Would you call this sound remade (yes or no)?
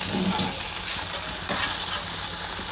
no